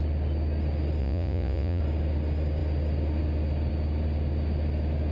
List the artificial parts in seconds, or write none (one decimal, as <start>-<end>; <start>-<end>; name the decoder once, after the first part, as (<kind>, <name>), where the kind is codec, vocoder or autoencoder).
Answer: 1.0-1.8 (vocoder, Vocos)